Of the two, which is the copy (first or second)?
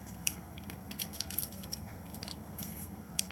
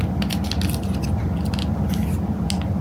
first